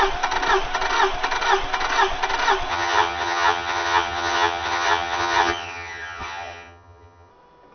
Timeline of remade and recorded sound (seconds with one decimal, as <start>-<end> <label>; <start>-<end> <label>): 0.0-2.7 recorded; 2.7-7.3 remade; 7.3-7.7 recorded

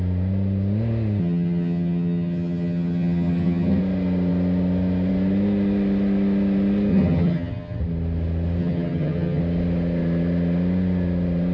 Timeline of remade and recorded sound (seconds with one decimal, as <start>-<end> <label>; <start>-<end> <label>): 0.0-1.2 recorded; 1.2-3.8 remade; 3.8-6.9 recorded; 6.9-7.8 remade; 7.8-8.6 recorded; 8.6-9.4 remade; 9.4-11.5 recorded

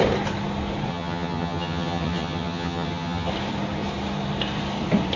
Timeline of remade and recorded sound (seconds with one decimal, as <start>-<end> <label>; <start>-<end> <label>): 0.0-0.9 recorded; 0.9-3.3 remade; 3.3-5.2 recorded

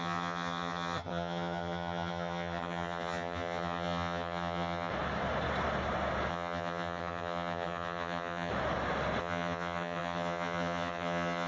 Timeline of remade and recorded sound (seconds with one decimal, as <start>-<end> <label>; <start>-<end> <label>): 0.0-4.9 remade; 4.9-6.3 recorded; 6.3-8.5 remade; 8.5-9.2 recorded; 9.2-11.5 remade